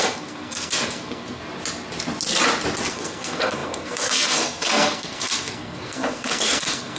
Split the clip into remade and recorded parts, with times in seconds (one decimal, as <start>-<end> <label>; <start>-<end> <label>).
0.0-1.4 remade; 1.4-2.9 recorded; 2.9-7.0 remade

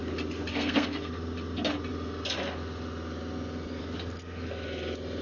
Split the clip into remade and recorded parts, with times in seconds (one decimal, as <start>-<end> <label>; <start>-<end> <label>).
0.0-0.5 recorded; 0.5-1.1 remade; 1.1-5.2 recorded

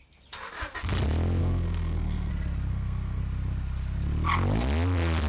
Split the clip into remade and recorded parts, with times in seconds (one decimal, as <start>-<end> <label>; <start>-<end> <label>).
0.0-1.4 recorded; 1.4-2.3 remade; 2.3-2.7 recorded; 2.7-3.2 remade; 3.2-5.3 recorded

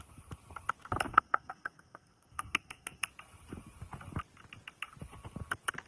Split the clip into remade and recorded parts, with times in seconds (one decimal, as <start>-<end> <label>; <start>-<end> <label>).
0.0-1.1 recorded; 1.1-3.1 remade; 3.1-5.9 recorded

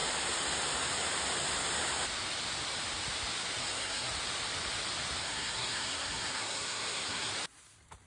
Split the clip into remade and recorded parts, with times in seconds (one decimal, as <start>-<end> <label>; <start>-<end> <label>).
0.0-3.6 recorded; 3.6-4.1 remade; 4.1-5.2 recorded; 5.2-7.3 remade; 7.3-8.1 recorded